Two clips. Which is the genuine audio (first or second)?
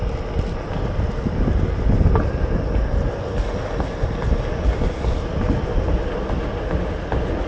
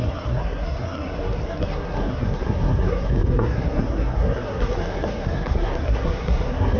first